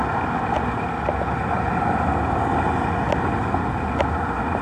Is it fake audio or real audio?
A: real